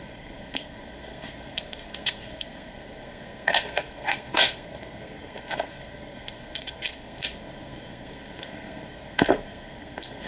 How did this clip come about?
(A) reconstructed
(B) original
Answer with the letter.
A